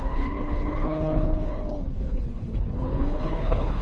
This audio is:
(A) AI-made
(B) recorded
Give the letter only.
A